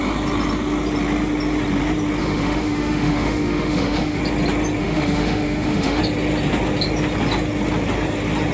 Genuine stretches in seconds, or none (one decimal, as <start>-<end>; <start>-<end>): 0.0-2.2; 4.2-4.8; 6.0-8.5